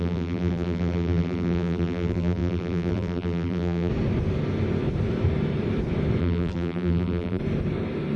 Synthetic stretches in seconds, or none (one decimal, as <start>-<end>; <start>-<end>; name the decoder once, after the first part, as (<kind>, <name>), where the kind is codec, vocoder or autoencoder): 0.0-3.9 (vocoder, BigVGAN v2); 6.2-7.4